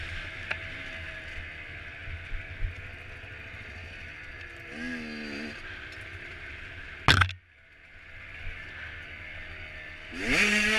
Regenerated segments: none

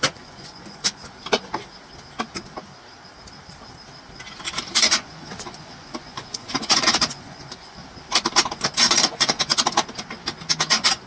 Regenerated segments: 0.0-1.0 (vocoder, Vocos); 4.8-7.8; 8.5-9.5

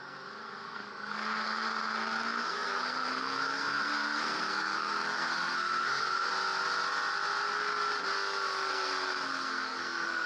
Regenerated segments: 0.0-6.3 (codec, SNAC); 8.7-10.3

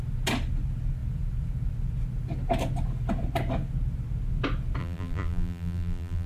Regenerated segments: 4.8-6.3 (vocoder, BigVGAN v2)

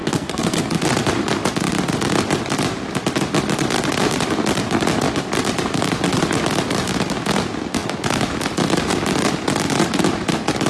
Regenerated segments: 0.0-0.8 (codec, SNAC)